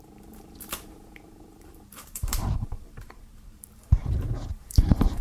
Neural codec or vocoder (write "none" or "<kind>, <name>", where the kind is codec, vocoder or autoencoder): vocoder, BigVGAN v2